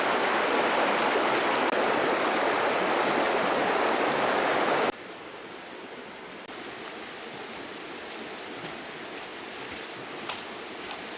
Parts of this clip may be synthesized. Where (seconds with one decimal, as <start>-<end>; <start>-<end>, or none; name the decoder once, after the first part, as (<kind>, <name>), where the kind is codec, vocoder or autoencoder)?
9.3-11.2 (vocoder, BigVGAN v2)